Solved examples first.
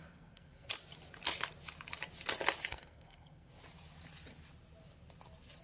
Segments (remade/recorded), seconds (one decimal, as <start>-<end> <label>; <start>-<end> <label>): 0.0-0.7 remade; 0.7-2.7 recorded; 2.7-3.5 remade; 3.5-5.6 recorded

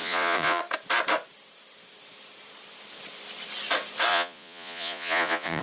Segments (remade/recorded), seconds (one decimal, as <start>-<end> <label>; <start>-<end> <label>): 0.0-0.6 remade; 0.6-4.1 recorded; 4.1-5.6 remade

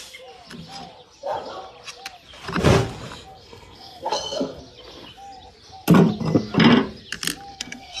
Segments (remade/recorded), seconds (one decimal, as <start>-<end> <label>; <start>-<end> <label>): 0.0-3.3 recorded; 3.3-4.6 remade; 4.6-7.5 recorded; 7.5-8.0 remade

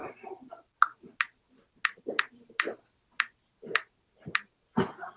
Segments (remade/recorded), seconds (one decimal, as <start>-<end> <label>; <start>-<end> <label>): 0.0-5.2 recorded